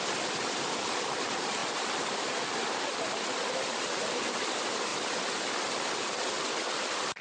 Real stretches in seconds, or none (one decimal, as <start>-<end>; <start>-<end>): 0.0-7.2